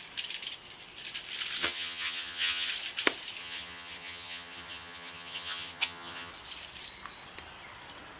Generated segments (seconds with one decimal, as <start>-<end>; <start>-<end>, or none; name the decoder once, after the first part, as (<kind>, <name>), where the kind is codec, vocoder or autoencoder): 1.6-2.7 (vocoder, HiFi-GAN); 3.4-6.3